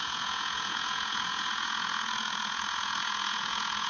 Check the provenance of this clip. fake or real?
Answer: fake